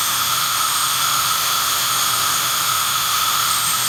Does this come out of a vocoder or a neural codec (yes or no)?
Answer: yes